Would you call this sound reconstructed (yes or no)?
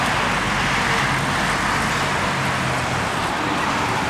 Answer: no